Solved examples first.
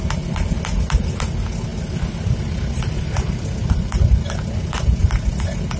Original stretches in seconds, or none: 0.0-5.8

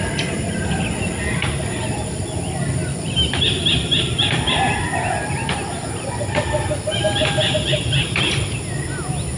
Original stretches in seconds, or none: 0.0-9.4

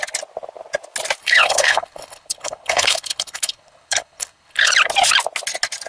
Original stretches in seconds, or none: 0.0-1.2; 4.7-5.9

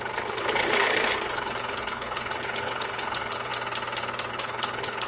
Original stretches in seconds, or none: 3.5-4.3

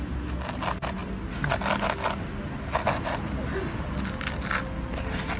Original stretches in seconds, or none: 0.0-5.4

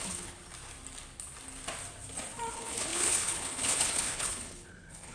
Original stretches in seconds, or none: 0.4-2.5

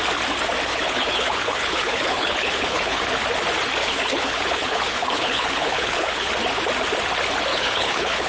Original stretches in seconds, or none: 0.0-0.7; 3.0-3.8; 6.3-7.5

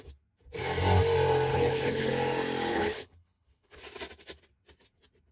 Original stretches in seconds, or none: 0.0-1.5; 2.1-2.7; 3.8-5.3